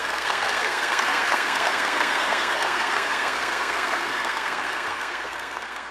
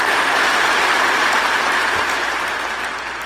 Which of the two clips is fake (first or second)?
first